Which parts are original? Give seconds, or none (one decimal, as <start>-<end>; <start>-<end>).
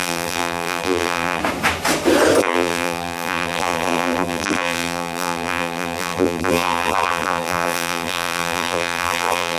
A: 1.4-2.4